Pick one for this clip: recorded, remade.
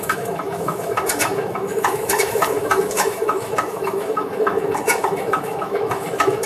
remade